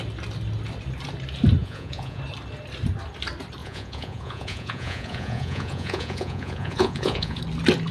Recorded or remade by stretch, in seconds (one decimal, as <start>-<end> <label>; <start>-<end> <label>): 0.0-1.6 recorded; 1.6-2.2 remade; 2.2-3.6 recorded; 3.6-7.4 remade; 7.4-7.9 recorded